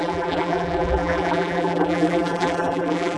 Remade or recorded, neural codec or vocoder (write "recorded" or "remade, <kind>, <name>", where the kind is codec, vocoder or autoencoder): remade, vocoder, BigVGAN v2